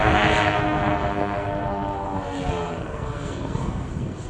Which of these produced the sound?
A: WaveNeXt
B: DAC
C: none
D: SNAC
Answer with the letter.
D